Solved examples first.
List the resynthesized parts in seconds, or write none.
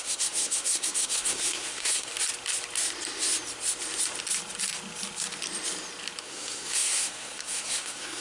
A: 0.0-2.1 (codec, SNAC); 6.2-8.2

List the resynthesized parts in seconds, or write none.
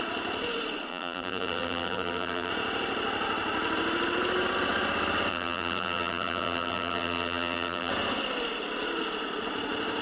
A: 0.9-2.5 (vocoder, BigVGAN v2); 5.3-7.9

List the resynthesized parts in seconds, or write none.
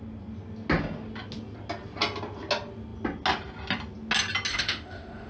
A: 4.5-5.3 (autoencoder, DAC-VAE)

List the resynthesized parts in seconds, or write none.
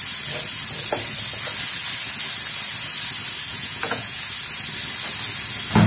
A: 3.5-4.2 (vocoder, Vocos)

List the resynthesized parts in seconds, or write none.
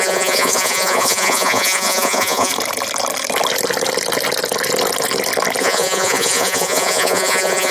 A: 0.0-2.5 (vocoder, Vocos); 5.6-7.7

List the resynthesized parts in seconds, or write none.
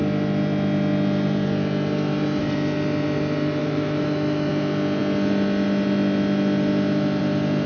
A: 3.6-4.5 (autoencoder, DAC-VAE)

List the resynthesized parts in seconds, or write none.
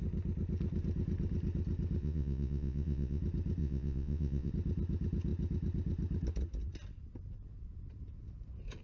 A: 2.0-3.2 (vocoder, Vocos); 3.6-4.5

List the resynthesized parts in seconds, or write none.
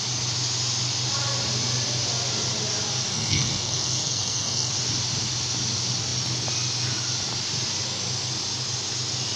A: 3.1-4.7 (codec, SNAC)